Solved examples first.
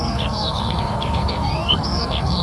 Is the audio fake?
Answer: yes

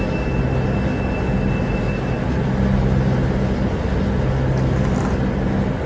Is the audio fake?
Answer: no